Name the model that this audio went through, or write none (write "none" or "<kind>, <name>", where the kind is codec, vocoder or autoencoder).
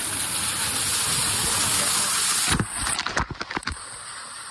none